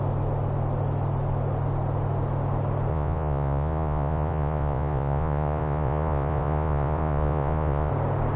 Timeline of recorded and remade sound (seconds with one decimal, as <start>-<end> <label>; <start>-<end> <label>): 0.0-2.9 recorded; 2.9-7.9 remade; 7.9-8.4 recorded